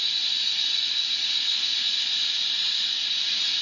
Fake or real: real